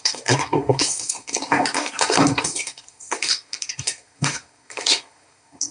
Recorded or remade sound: remade